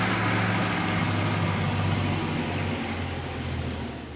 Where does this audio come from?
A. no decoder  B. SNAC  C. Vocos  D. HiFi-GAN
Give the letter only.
A